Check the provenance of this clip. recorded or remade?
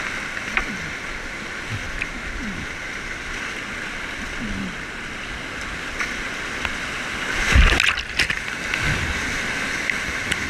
recorded